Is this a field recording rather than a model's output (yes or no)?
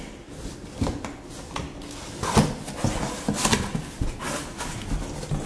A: yes